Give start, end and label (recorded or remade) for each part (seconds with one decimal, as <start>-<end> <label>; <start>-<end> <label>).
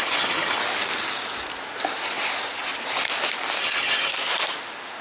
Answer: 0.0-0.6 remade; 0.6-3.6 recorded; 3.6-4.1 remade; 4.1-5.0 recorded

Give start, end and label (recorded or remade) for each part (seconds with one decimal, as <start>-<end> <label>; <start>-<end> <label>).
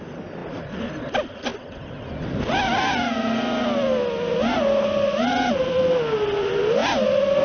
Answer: 0.0-7.4 recorded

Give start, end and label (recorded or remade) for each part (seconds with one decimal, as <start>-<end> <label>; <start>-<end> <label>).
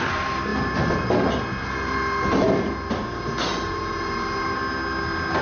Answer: 0.0-5.4 recorded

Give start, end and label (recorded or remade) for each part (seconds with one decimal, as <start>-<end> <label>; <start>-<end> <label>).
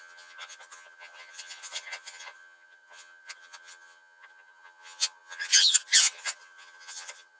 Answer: 0.0-7.4 remade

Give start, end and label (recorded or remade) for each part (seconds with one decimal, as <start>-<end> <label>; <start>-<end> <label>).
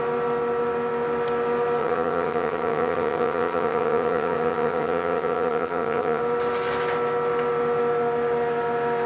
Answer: 0.0-1.8 recorded; 1.8-6.2 remade; 6.2-9.1 recorded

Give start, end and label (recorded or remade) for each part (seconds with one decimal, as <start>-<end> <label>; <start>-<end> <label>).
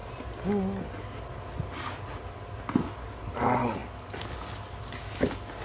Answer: 0.0-5.6 recorded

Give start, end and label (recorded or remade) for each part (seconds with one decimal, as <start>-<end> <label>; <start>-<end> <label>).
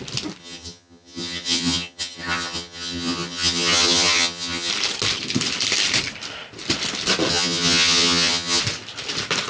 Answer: 0.0-0.4 recorded; 0.4-4.7 remade; 4.7-7.3 recorded; 7.3-8.6 remade; 8.6-9.5 recorded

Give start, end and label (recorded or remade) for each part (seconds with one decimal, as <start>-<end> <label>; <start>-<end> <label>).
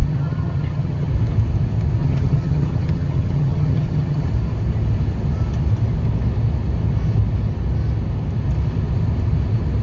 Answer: 0.0-1.1 remade; 1.1-2.0 recorded; 2.0-4.3 remade; 4.3-9.8 recorded